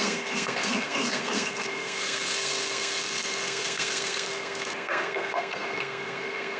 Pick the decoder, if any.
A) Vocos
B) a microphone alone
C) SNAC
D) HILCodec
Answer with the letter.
C